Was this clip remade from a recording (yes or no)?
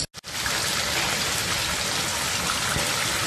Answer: no